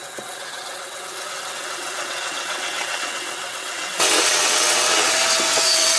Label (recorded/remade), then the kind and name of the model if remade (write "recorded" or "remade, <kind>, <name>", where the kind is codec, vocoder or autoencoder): remade, vocoder, WaveNeXt